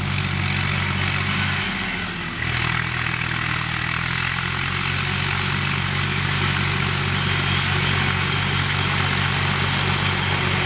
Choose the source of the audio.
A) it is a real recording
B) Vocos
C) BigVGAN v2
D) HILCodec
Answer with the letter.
A